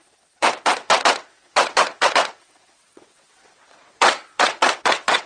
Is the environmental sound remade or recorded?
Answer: remade